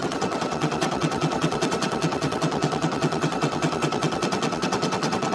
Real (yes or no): no